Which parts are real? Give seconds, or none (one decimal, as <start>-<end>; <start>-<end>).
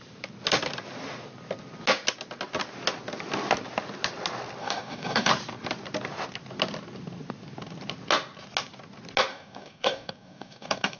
0.0-4.6; 5.3-9.3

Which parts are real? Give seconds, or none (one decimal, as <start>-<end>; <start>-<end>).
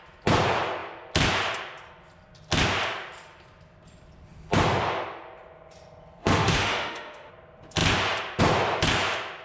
0.0-6.2; 7.3-9.4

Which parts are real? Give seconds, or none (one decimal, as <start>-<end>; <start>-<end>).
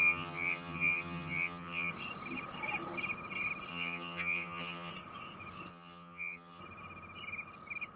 1.9-3.7; 4.9-5.7; 6.6-8.0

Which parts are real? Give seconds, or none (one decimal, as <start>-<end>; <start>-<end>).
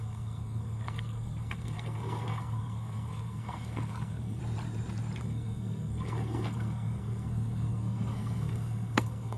4.4-5.2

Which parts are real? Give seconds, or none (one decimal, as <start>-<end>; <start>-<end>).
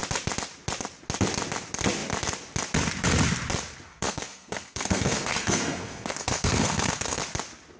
0.0-3.9; 7.2-7.8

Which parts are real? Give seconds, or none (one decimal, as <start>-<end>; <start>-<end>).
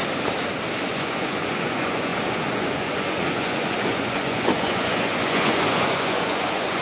0.0-0.9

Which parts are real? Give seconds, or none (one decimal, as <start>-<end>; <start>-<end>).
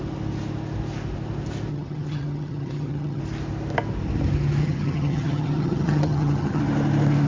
0.0-1.7; 3.2-4.6; 6.6-7.3